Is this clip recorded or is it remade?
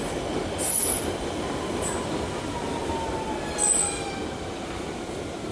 recorded